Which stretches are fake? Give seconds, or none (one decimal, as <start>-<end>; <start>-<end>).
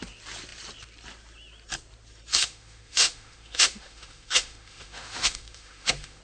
2.3-6.2